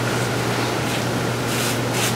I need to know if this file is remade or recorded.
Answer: recorded